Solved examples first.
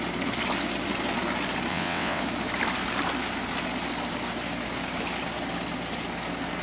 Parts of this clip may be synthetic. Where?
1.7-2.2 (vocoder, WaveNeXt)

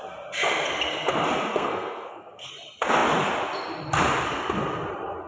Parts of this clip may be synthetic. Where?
1.5-2.5 (codec, SNAC)

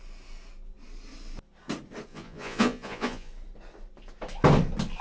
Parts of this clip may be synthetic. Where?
2.1-3.3 (vocoder, Vocos)

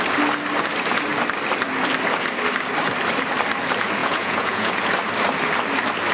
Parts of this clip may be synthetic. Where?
4.0-4.7 (vocoder, Vocos)

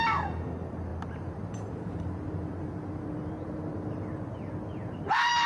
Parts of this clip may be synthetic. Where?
0.9-4.2 (vocoder, BigVGAN v2)

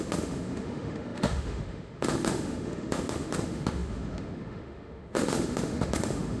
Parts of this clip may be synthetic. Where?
0.0-6.4 (autoencoder, DAC-VAE)

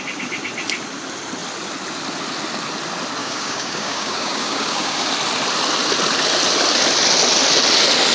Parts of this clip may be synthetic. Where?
3.2-5.1 (codec, DAC)

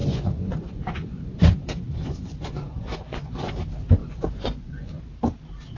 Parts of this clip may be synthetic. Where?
0.0-3.5 (vocoder, Vocos); 4.0-5.0